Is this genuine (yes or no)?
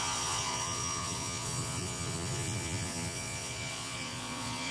no